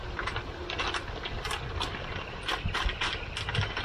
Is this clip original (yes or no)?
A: yes